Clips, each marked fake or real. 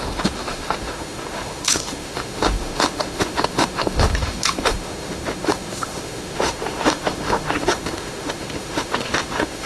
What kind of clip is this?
fake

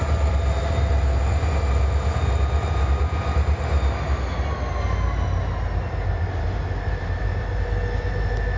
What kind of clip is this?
real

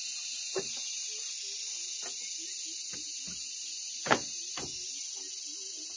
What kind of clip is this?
real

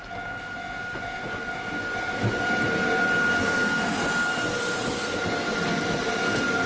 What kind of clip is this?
real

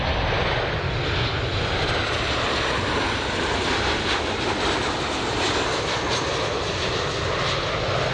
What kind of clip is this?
real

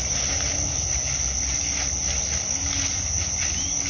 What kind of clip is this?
real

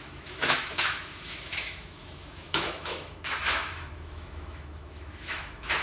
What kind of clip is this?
fake